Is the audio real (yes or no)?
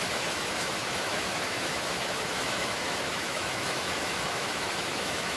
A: no